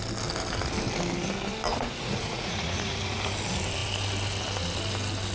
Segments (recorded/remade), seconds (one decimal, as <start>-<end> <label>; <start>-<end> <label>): 0.0-1.7 recorded; 1.7-3.3 remade; 3.3-5.3 recorded